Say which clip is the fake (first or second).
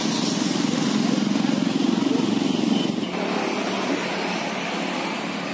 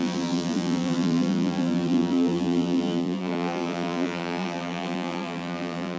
second